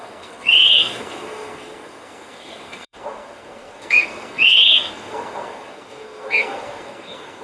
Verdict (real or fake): fake